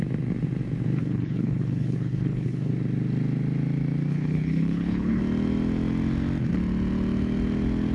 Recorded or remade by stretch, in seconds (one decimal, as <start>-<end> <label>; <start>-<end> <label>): 0.0-1.0 recorded; 1.0-2.7 remade; 2.7-4.1 recorded; 4.1-5.2 remade; 5.2-7.9 recorded